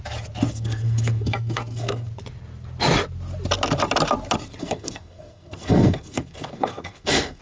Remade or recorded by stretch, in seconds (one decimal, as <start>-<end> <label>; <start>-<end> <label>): 0.0-0.5 recorded; 0.5-2.1 remade; 2.1-4.6 recorded; 4.6-7.4 remade

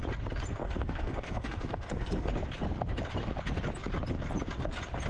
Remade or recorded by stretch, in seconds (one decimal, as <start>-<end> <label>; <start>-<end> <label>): 0.0-0.6 recorded; 0.6-2.3 remade; 2.3-5.1 recorded